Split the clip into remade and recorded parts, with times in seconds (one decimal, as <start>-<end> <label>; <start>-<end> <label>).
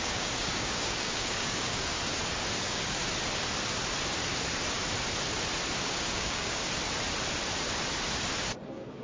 0.0-1.9 remade; 1.9-2.6 recorded; 2.6-3.0 remade; 3.0-5.8 recorded; 5.8-6.6 remade; 6.6-8.6 recorded; 8.6-9.0 remade